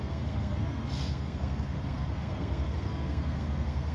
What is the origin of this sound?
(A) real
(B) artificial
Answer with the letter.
B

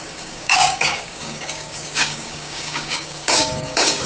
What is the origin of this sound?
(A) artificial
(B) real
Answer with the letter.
A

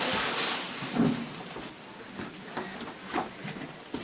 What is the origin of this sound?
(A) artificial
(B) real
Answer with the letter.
B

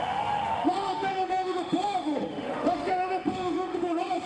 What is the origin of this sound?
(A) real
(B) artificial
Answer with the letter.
B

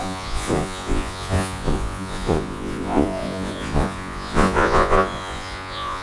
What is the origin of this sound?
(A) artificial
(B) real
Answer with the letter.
A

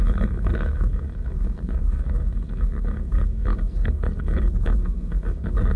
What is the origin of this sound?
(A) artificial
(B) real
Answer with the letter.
A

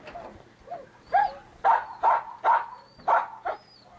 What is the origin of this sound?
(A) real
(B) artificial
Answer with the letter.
A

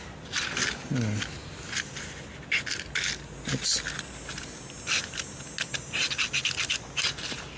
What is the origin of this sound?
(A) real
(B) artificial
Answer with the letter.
A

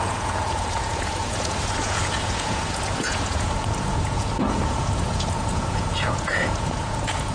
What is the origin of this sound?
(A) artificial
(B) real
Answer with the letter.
A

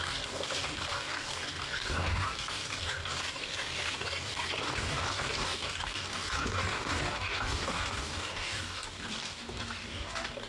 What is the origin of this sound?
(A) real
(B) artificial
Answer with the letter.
B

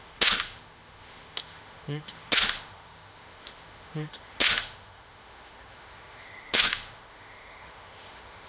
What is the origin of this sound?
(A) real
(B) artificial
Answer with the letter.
B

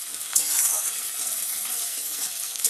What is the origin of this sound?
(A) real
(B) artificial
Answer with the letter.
B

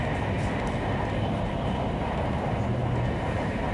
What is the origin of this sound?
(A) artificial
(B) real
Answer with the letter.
B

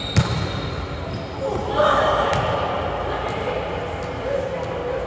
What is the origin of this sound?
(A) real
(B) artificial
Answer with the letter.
A